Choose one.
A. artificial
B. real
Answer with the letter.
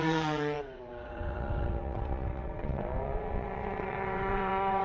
A